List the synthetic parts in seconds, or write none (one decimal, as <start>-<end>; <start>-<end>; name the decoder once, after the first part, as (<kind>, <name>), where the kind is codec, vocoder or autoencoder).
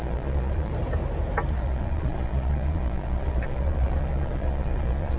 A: 0.0-0.7 (vocoder, Vocos); 1.5-5.2